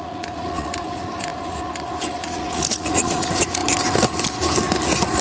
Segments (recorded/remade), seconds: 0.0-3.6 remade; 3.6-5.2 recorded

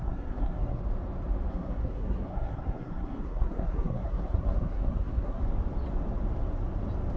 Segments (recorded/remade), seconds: 0.0-0.8 remade; 0.8-1.5 recorded; 1.5-5.4 remade; 5.4-7.2 recorded

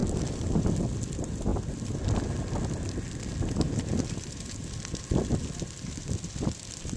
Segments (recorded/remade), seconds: 0.0-7.0 recorded

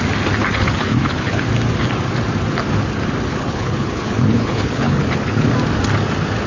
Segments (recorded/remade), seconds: 0.0-0.5 recorded; 0.5-1.4 remade; 1.4-3.3 recorded; 3.3-5.5 remade; 5.5-6.5 recorded

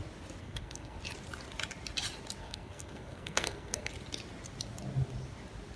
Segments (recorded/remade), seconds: 0.0-0.4 recorded; 0.4-1.0 remade; 1.0-2.4 recorded; 2.4-3.9 remade; 3.9-5.8 recorded